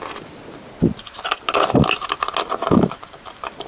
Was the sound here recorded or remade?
recorded